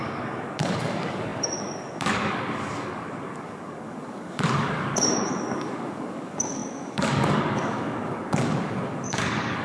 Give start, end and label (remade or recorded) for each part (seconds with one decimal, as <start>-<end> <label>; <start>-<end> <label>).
0.0-9.6 remade